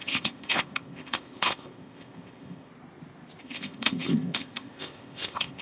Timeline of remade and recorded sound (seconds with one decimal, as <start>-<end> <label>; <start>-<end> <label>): 0.0-2.7 remade; 2.7-3.4 recorded; 3.4-5.6 remade